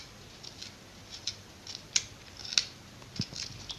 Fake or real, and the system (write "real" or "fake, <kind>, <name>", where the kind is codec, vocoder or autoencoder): real